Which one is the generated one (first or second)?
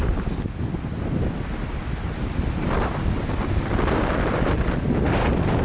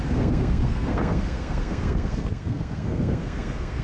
second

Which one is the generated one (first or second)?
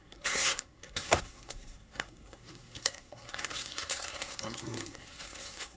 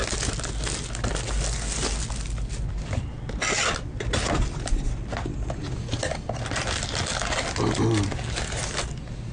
first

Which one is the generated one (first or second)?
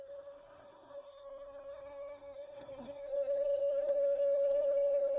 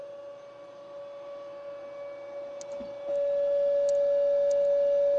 first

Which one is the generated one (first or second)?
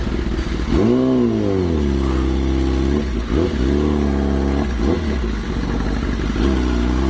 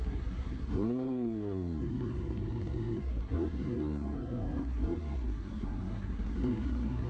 second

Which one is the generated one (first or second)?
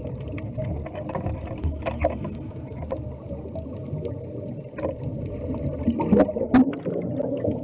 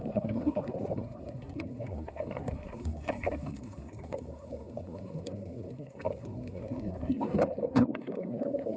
second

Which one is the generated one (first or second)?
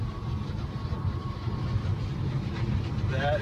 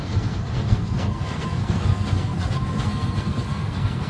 second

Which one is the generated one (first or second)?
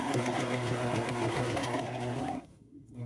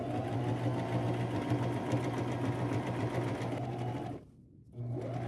first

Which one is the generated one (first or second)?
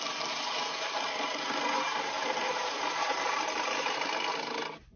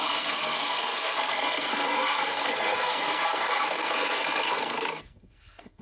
second